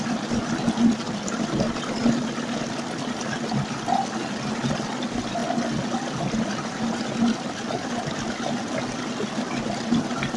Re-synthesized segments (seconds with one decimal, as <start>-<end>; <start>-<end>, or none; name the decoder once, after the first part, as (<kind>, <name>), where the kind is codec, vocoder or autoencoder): none